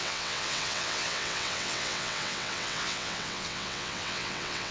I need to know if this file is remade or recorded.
remade